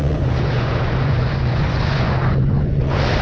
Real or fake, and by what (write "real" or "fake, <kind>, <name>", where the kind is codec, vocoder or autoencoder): fake, vocoder, Vocos